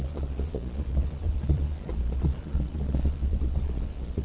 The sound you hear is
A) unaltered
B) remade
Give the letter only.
B